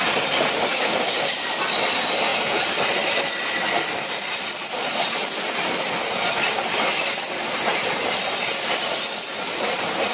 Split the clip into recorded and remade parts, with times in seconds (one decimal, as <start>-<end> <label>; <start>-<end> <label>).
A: 0.0-0.7 recorded; 0.7-1.3 remade; 1.3-10.1 recorded